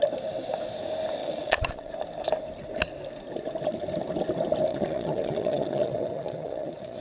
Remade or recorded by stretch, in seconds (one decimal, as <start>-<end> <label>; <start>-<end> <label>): 0.0-1.2 recorded; 1.2-1.9 remade; 1.9-4.7 recorded; 4.7-7.0 remade